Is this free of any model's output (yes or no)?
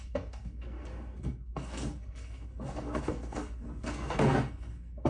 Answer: no